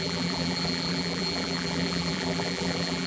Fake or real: fake